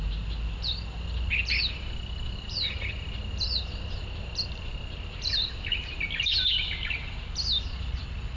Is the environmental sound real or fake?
real